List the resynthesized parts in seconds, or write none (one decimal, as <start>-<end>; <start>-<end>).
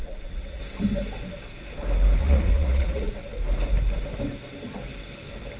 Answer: 0.0-0.6; 2.2-3.2